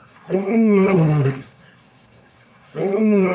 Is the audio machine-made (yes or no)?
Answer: yes